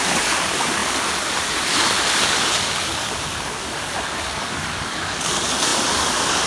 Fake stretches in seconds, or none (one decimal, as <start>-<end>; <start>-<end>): 0.0-6.5